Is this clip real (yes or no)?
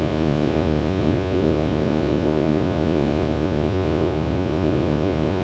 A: no